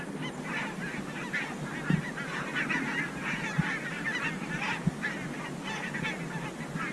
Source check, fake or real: real